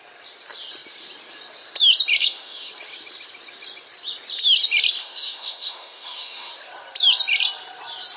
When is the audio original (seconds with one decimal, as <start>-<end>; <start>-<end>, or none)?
0.0-2.2; 2.7-5.0; 6.5-8.2